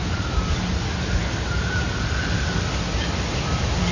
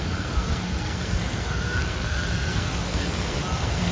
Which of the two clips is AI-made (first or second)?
second